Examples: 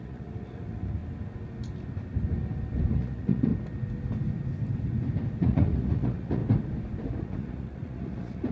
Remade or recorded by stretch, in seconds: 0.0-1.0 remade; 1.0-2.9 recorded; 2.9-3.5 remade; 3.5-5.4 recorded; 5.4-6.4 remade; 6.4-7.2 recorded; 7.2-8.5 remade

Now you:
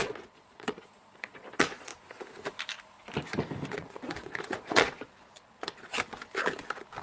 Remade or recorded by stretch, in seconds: 0.0-1.9 remade; 1.9-3.7 recorded; 3.7-5.9 remade; 5.9-7.0 recorded

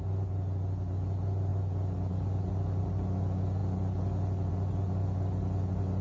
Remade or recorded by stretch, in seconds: 0.0-6.0 recorded

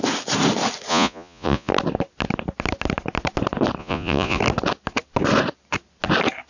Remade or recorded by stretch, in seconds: 0.0-0.9 recorded; 0.9-1.7 remade; 1.7-3.8 recorded; 3.8-4.4 remade; 4.4-6.5 recorded